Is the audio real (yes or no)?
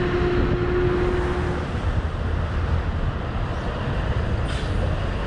yes